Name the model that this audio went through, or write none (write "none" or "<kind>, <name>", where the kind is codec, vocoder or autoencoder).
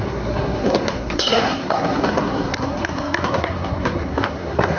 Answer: codec, SNAC